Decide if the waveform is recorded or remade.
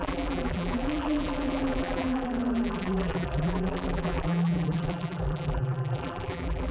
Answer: remade